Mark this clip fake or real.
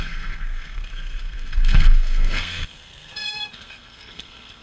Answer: fake